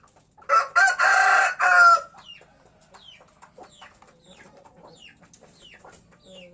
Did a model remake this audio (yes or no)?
no